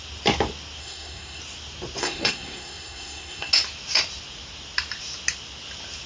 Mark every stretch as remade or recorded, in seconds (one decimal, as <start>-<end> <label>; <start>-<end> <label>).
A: 0.0-0.8 recorded; 0.8-1.4 remade; 1.4-2.0 recorded; 2.0-3.5 remade; 3.5-6.1 recorded